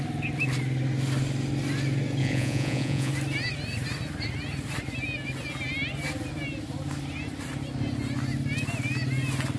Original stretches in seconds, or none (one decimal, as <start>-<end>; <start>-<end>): 0.0-2.2; 3.1-9.6